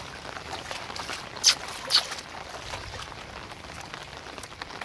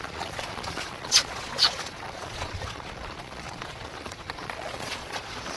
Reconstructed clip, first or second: second